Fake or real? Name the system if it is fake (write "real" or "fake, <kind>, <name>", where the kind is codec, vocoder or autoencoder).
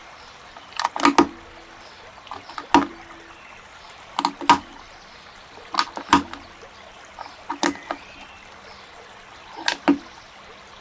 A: real